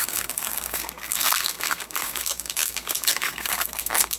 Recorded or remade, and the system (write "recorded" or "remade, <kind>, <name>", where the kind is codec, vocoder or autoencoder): remade, codec, SNAC